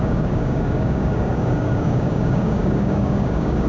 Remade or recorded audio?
remade